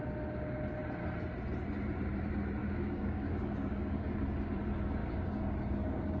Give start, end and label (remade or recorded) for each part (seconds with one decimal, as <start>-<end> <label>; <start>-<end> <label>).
0.0-2.6 recorded; 2.6-4.2 remade; 4.2-5.0 recorded; 5.0-6.2 remade